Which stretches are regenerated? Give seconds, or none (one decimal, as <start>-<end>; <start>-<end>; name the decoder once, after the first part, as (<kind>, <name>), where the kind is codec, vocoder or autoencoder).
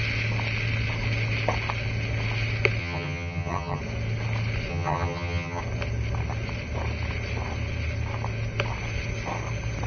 2.8-3.8 (vocoder, HiFi-GAN); 4.7-5.6